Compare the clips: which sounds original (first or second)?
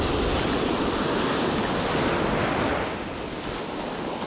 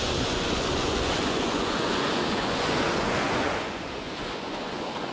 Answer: first